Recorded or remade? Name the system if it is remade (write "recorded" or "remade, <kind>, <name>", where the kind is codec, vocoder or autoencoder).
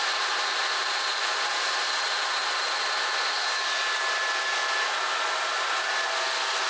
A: recorded